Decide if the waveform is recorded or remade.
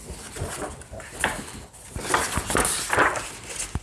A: recorded